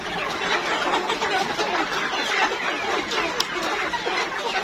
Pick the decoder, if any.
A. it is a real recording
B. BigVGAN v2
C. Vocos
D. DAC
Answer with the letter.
A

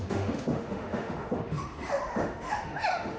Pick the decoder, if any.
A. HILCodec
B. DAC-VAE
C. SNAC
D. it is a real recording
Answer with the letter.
B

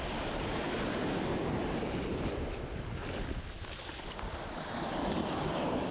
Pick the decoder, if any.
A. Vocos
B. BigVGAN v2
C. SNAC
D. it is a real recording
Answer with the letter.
D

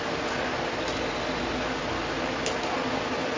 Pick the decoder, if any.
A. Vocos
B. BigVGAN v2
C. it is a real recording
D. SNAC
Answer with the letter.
C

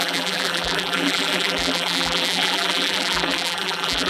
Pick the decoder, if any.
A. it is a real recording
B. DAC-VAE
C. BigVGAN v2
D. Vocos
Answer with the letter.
C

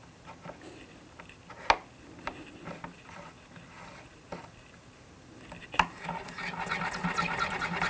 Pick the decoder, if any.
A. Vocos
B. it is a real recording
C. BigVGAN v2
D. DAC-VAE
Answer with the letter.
B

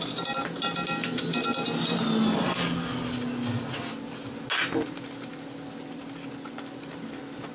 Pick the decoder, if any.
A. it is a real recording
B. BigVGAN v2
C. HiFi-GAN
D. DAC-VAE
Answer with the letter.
A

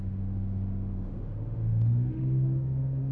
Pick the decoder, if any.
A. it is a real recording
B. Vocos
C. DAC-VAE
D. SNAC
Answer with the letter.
C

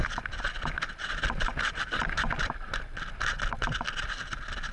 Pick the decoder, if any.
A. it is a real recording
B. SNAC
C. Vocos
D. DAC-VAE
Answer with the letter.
A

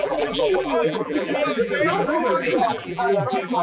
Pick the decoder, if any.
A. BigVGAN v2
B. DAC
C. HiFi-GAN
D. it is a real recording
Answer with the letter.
A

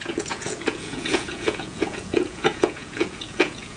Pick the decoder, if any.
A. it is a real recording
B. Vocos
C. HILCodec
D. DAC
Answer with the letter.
B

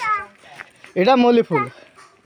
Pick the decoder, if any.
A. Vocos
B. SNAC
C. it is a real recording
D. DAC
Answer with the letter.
C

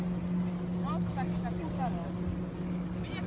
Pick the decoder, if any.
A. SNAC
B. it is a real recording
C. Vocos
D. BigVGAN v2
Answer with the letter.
B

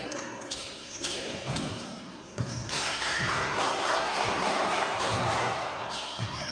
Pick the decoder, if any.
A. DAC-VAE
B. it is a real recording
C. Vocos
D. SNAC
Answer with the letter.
D